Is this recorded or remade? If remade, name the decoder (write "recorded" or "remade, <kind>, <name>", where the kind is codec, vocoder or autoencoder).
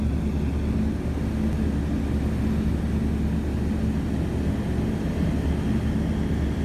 recorded